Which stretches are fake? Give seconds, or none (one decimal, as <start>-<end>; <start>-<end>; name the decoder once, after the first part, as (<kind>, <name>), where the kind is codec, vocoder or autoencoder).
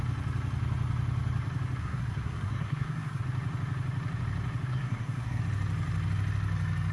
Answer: 1.8-3.2 (codec, SNAC); 4.7-5.4